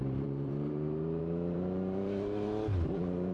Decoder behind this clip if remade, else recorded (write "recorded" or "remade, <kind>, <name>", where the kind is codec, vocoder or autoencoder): remade, vocoder, BigVGAN v2